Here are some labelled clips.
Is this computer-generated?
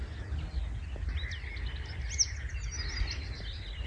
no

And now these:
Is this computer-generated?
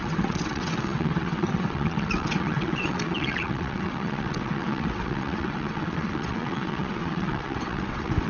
yes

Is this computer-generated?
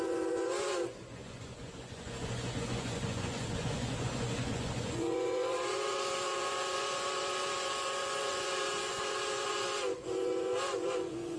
yes